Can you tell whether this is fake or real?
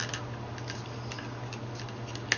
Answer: real